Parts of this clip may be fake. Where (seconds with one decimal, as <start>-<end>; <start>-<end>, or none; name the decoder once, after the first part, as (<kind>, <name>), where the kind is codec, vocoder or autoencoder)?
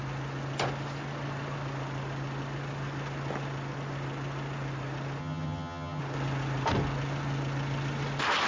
5.2-6.0 (vocoder, HiFi-GAN)